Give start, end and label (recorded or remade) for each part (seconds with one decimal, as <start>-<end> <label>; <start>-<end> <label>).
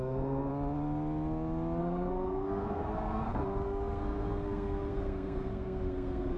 0.0-0.5 remade; 0.5-1.8 recorded; 1.8-6.4 remade